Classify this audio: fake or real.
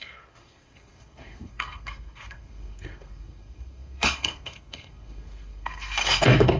fake